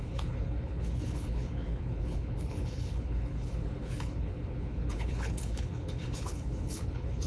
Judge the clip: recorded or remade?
remade